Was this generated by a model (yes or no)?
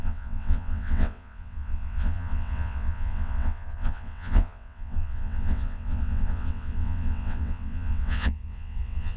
yes